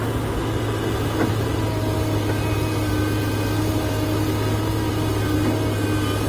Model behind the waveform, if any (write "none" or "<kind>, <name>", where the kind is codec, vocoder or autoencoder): none